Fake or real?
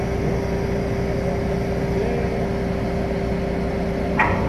real